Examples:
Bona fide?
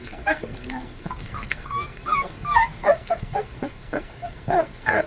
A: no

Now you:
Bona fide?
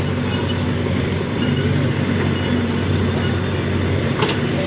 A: yes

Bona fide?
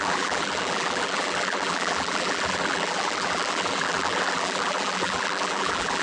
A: no